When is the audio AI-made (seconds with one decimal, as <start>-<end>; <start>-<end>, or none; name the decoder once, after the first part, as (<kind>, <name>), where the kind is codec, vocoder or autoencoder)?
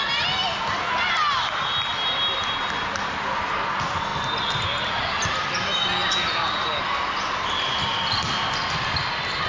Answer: none